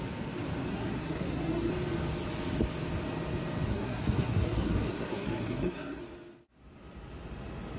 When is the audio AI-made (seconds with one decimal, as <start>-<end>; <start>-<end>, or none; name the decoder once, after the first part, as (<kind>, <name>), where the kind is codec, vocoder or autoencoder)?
0.7-1.7 (codec, SNAC); 3.7-6.0